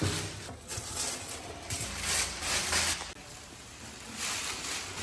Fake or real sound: real